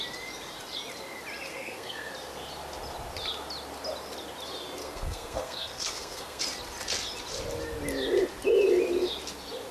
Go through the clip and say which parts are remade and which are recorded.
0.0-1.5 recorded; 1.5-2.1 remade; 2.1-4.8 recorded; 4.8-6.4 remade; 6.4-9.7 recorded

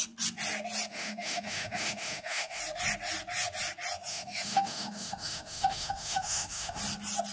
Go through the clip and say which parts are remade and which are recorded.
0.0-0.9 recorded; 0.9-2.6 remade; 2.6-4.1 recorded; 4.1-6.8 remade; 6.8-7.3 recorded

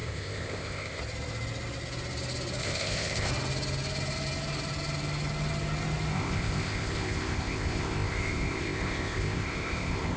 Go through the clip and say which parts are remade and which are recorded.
0.0-1.0 remade; 1.0-2.6 recorded; 2.6-3.3 remade; 3.3-6.1 recorded; 6.1-10.2 remade